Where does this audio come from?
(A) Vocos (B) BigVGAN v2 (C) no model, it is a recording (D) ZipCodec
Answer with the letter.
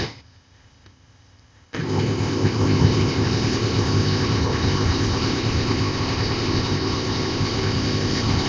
D